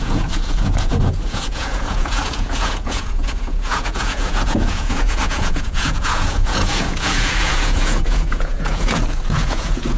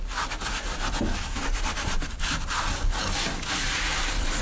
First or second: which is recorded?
second